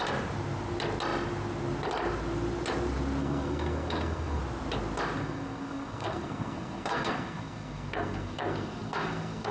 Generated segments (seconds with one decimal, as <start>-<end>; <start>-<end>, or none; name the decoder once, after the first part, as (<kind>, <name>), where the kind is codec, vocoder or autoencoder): 3.2-4.4 (codec, SNAC); 5.2-9.5